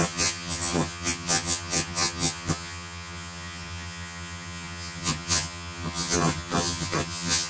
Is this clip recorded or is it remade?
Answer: remade